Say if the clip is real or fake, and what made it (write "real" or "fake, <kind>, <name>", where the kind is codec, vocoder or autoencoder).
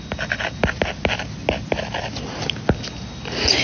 real